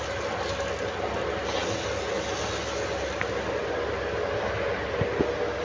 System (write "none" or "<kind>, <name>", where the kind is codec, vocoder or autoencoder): none